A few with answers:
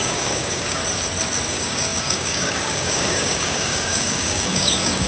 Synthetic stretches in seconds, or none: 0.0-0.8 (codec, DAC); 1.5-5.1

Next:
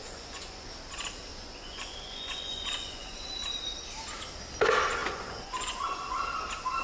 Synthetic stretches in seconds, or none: 0.0-0.7 (vocoder, Vocos); 1.3-3.3; 5.0-6.3

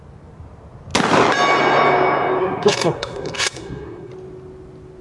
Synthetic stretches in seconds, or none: 2.4-4.1 (codec, SNAC)

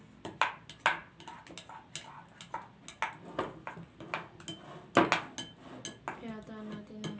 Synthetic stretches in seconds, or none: none

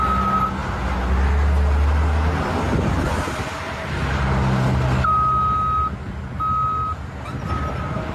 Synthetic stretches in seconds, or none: none

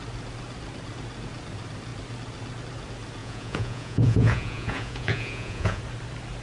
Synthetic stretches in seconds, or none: 3.2-5.8 (vocoder, Vocos)